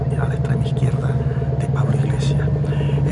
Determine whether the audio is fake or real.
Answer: real